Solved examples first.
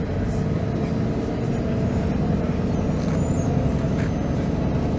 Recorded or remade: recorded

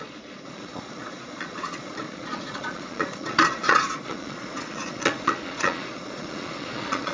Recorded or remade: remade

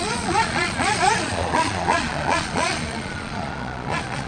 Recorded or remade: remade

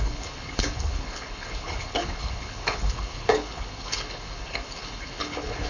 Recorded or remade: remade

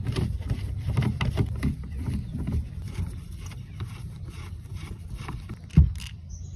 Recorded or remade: remade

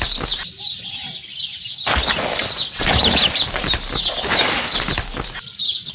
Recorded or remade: recorded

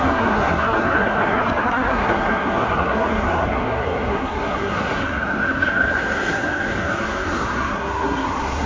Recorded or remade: remade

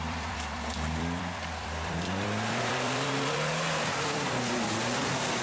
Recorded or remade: remade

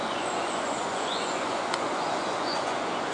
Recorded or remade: remade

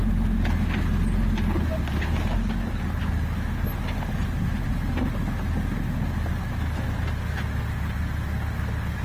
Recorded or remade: recorded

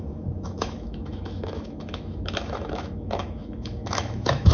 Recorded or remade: remade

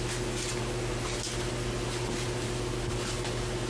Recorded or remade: recorded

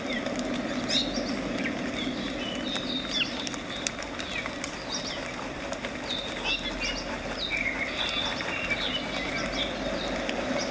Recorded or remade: remade